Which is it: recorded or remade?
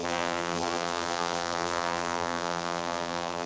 remade